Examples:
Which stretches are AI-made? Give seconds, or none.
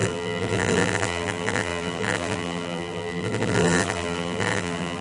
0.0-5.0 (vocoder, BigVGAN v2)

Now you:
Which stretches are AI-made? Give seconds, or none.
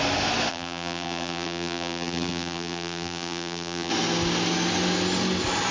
0.5-3.9 (vocoder, BigVGAN v2)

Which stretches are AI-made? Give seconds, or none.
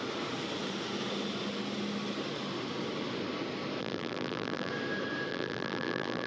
3.8-4.7 (vocoder, BigVGAN v2); 5.3-6.3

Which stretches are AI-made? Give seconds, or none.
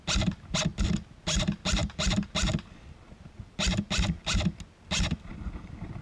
none